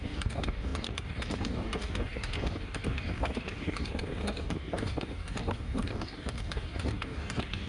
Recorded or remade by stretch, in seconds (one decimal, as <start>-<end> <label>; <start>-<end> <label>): 0.0-7.7 remade